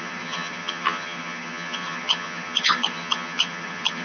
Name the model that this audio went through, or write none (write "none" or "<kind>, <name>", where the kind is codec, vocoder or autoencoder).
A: vocoder, HiFi-GAN